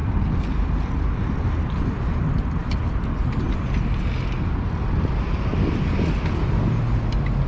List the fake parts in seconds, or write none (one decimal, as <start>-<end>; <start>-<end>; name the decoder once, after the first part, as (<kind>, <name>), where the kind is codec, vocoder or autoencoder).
none